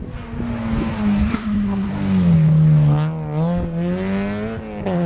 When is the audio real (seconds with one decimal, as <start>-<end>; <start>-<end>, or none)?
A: 0.0-1.2; 1.9-5.1